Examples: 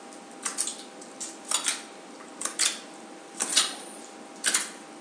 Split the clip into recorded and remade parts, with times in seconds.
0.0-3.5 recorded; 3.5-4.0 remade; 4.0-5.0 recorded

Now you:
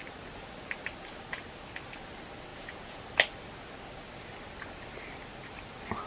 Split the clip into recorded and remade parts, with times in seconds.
0.0-2.5 recorded; 2.5-3.0 remade; 3.0-6.1 recorded

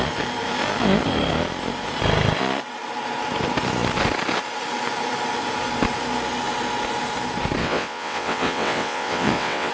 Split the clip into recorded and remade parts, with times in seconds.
0.0-7.6 recorded; 7.6-9.7 remade

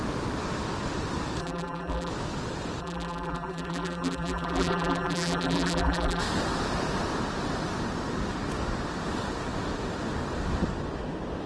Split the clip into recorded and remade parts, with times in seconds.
0.0-1.4 recorded; 1.4-2.1 remade; 2.1-2.8 recorded; 2.8-6.2 remade; 6.2-11.5 recorded

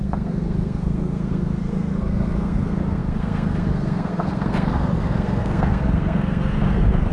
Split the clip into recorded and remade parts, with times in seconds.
0.0-7.1 remade

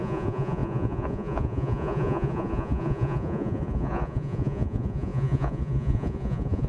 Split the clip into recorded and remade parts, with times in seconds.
0.0-6.7 remade

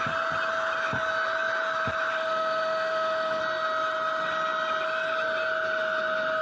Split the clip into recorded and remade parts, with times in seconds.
0.0-2.1 recorded; 2.1-3.4 remade; 3.4-6.4 recorded

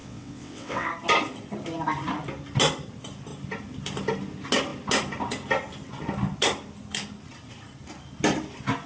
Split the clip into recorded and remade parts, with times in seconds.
0.0-0.9 remade; 0.9-8.9 recorded